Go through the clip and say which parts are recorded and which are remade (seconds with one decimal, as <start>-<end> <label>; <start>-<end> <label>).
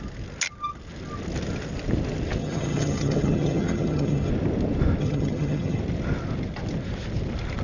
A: 0.0-2.4 recorded; 2.4-4.3 remade; 4.3-5.0 recorded; 5.0-5.8 remade; 5.8-7.6 recorded